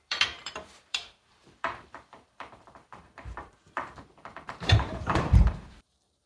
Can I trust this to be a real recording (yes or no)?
no